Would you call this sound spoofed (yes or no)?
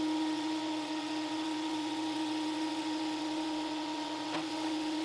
yes